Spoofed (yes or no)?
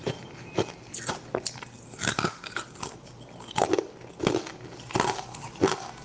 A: no